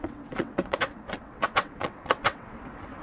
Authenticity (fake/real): fake